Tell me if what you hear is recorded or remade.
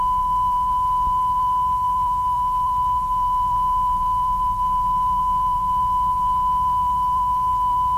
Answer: remade